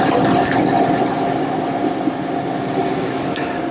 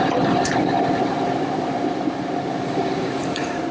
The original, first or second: first